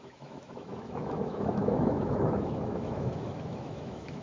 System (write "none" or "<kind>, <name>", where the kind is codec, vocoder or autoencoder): autoencoder, DAC-VAE